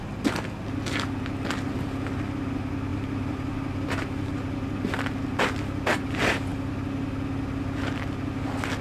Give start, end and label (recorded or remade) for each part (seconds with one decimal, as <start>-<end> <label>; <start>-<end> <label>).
0.0-8.8 recorded